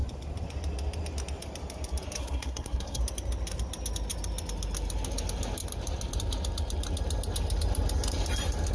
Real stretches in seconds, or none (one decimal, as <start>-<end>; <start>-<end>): 0.0-2.2; 3.0-8.7